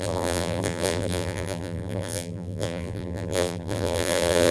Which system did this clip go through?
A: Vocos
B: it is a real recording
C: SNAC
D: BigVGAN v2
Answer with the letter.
D